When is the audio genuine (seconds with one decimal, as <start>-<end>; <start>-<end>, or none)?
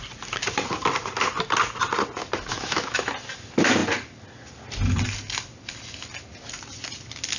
0.0-2.5; 3.1-7.4